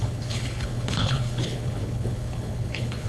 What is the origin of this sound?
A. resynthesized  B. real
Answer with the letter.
A